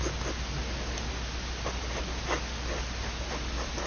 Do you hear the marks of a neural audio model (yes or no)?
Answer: no